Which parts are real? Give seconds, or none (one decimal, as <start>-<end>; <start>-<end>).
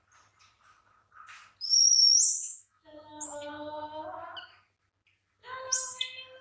0.0-2.4; 3.5-5.4; 6.0-6.4